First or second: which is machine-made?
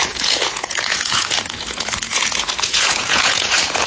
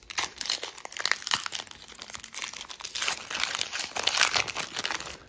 first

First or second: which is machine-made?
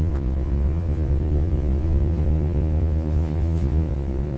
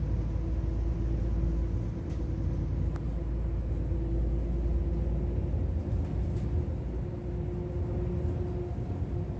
first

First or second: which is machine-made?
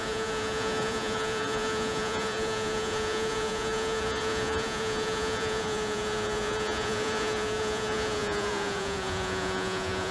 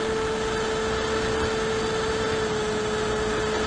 first